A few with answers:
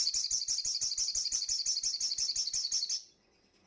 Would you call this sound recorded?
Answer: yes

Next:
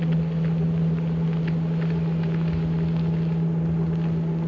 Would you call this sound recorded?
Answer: yes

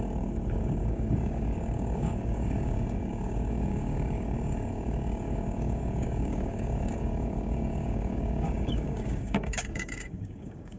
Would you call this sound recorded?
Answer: no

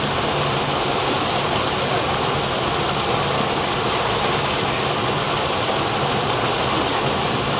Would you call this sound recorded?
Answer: yes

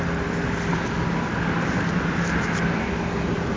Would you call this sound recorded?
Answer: yes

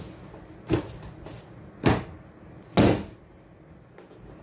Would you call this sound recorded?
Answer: yes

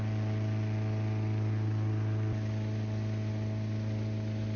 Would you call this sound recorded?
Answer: yes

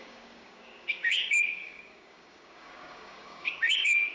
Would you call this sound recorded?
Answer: no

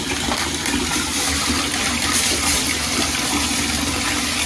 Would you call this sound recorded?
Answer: yes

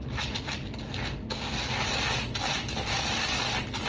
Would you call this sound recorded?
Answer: yes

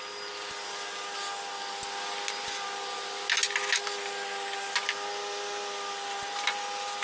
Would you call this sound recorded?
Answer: yes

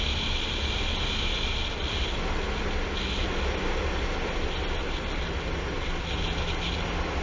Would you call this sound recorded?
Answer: yes